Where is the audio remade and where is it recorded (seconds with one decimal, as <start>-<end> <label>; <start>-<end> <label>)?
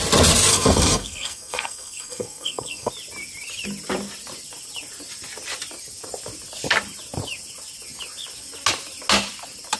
0.0-0.5 recorded; 0.5-2.9 remade; 2.9-9.8 recorded